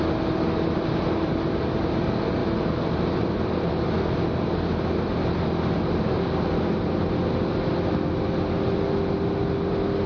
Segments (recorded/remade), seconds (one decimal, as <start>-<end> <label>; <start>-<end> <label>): 0.0-10.1 recorded